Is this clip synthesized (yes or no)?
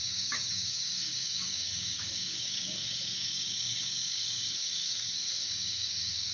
yes